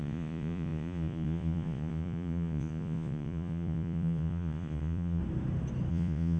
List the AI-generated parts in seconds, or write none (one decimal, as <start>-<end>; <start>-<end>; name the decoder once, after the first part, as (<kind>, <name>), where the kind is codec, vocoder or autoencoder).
0.0-5.2 (vocoder, Vocos); 5.9-6.4